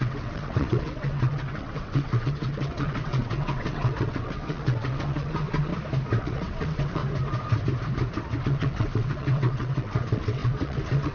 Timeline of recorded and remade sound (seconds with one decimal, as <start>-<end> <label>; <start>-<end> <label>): 0.0-5.7 remade; 5.7-6.2 recorded; 6.2-7.0 remade; 7.0-8.4 recorded; 8.4-11.1 remade

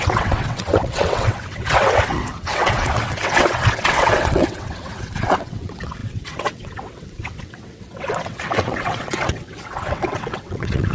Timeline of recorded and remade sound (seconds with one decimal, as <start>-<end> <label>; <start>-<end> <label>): 0.0-10.9 remade